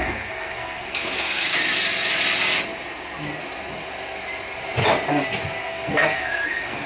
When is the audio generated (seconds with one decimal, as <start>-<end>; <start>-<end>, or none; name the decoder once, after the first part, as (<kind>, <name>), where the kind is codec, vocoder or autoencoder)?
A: 0.0-1.5 (codec, SNAC); 5.6-6.9